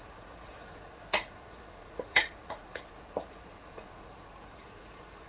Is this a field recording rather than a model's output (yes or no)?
no